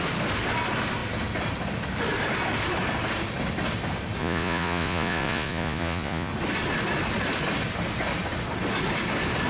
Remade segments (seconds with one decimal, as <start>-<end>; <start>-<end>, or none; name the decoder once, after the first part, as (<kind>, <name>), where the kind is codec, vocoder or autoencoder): 4.2-6.3 (vocoder, Vocos)